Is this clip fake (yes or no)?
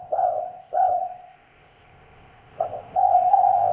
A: yes